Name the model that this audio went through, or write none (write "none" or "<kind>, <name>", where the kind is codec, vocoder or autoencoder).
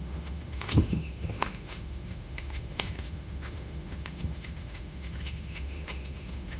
autoencoder, DAC-VAE